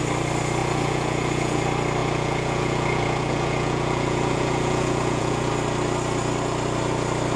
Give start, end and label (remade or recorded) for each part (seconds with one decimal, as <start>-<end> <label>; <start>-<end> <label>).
0.0-0.6 recorded; 0.6-1.6 remade; 1.6-2.0 recorded; 2.0-5.5 remade; 5.5-7.4 recorded